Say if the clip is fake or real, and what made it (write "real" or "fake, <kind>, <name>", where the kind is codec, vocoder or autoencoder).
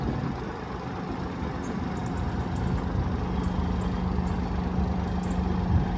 real